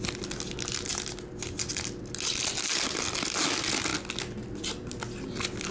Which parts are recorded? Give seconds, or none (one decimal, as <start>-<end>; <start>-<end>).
0.0-5.7